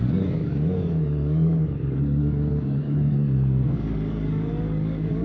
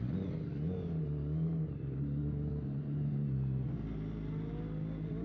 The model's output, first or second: first